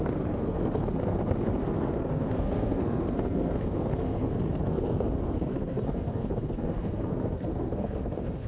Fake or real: fake